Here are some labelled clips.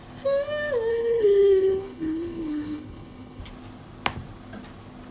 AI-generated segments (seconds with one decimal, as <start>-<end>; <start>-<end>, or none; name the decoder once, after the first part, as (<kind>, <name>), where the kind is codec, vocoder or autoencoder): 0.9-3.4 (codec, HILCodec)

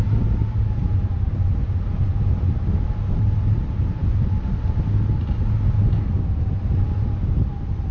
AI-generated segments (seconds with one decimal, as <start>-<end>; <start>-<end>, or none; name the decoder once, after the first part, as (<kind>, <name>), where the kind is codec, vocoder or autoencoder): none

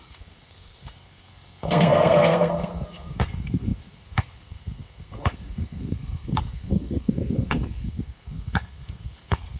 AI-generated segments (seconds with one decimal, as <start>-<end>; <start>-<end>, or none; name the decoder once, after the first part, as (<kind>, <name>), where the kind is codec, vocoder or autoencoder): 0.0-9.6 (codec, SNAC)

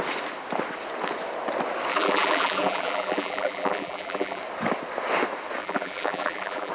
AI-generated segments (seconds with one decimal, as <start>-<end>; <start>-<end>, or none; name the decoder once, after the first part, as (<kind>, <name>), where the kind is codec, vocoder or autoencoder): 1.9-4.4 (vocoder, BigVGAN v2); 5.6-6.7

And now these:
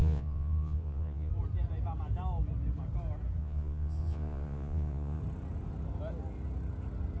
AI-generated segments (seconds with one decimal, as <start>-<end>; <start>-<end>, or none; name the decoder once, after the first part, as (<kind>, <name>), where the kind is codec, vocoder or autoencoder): 0.0-1.3 (vocoder, Vocos); 3.4-5.2